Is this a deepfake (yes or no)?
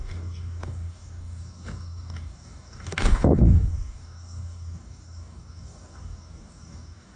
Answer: yes